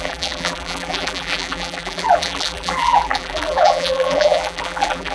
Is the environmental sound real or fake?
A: fake